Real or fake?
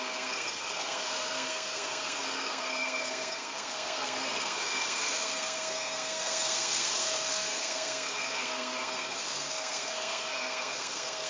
fake